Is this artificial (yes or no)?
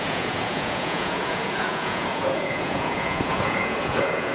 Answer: yes